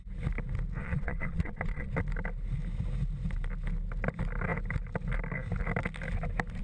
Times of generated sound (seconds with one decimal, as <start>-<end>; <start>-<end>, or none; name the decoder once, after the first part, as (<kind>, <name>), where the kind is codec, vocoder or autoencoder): 0.8-1.9 (vocoder, Vocos)